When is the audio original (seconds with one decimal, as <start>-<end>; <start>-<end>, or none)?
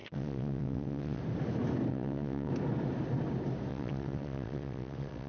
1.2-1.9; 2.5-3.7